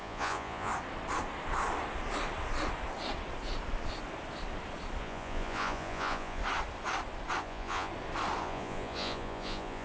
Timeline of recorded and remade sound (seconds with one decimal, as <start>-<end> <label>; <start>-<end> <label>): 0.0-0.7 remade; 0.7-5.0 recorded; 5.0-6.4 remade; 6.4-7.4 recorded; 7.4-7.9 remade; 7.9-8.4 recorded; 8.4-9.8 remade